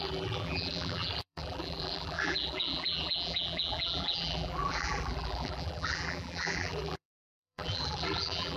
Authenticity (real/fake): fake